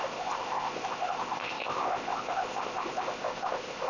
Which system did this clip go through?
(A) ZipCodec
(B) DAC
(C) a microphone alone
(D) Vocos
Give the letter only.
A